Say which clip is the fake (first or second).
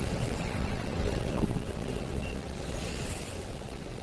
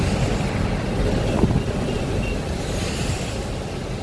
first